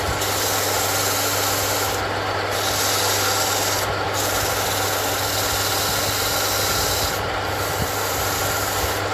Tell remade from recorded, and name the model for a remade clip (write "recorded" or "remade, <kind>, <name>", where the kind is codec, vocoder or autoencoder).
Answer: recorded